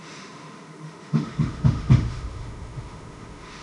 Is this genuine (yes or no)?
no